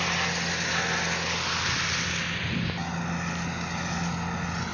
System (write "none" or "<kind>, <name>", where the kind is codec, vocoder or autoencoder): none